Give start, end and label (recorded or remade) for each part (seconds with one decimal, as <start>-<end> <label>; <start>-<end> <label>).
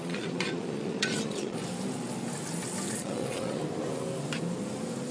0.0-1.6 remade; 1.6-2.9 recorded; 2.9-3.6 remade; 3.6-5.1 recorded